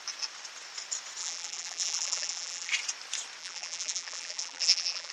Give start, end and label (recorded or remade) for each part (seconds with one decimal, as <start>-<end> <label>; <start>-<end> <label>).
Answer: 0.0-1.2 recorded; 1.2-2.7 remade; 2.7-3.4 recorded; 3.4-5.1 remade